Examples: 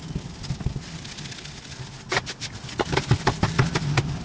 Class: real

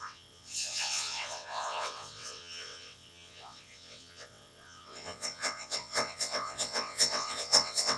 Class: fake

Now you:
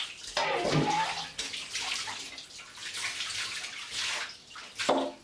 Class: real